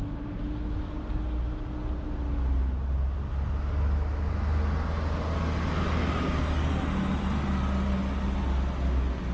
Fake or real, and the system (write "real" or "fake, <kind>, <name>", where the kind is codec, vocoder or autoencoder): real